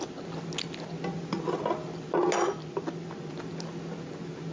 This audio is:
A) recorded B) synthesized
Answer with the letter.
A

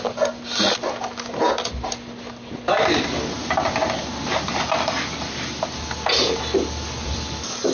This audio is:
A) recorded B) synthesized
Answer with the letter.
A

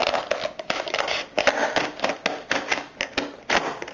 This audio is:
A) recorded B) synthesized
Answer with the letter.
A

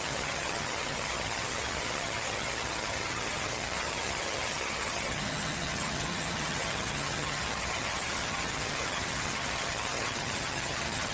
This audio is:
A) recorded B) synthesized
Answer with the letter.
B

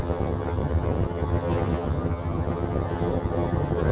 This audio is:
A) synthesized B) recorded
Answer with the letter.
A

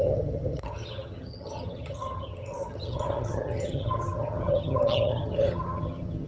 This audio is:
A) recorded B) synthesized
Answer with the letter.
B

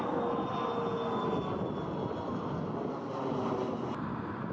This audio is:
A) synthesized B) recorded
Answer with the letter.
B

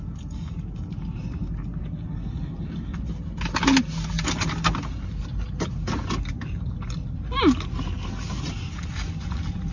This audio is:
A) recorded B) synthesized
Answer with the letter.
A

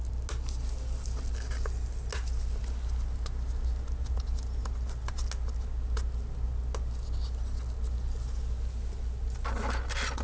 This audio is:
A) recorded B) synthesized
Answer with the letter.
A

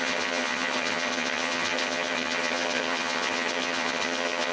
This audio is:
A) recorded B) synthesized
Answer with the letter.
B